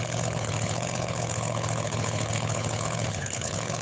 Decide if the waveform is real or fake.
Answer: fake